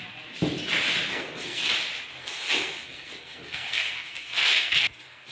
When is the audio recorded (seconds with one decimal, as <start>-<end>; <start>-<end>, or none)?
0.0-1.1; 1.7-2.2